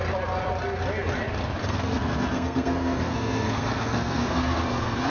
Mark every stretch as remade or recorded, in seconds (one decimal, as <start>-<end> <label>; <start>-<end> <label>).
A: 0.0-1.6 recorded; 1.6-5.1 remade